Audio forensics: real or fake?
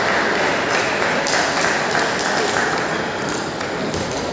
real